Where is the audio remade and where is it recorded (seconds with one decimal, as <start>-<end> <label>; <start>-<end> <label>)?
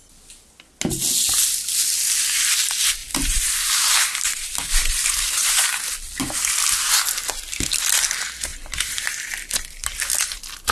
0.0-3.0 recorded; 3.0-5.8 remade; 5.8-8.5 recorded; 8.5-9.1 remade; 9.1-10.7 recorded